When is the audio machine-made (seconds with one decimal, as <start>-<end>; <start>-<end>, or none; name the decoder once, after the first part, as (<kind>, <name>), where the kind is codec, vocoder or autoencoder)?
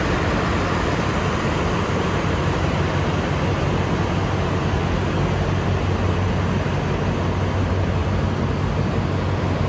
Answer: none